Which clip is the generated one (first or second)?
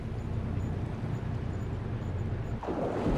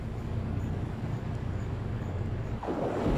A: second